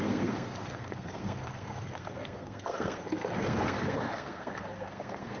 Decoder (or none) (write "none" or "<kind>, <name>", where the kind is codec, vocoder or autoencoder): codec, SNAC